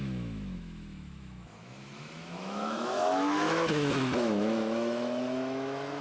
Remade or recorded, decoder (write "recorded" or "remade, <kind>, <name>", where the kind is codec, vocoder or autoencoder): remade, autoencoder, DAC-VAE